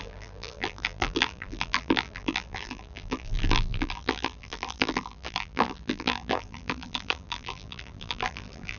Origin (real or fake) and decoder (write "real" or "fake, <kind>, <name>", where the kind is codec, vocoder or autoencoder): fake, vocoder, BigVGAN v2